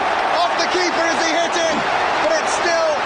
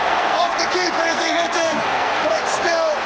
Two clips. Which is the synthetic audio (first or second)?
second